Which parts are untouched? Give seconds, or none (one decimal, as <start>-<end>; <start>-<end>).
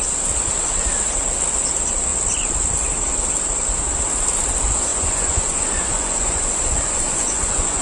0.0-4.9